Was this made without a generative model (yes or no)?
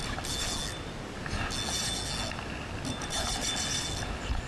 yes